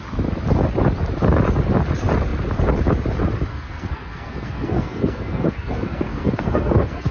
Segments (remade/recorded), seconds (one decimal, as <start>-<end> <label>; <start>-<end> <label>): 0.0-3.5 recorded; 3.5-7.1 remade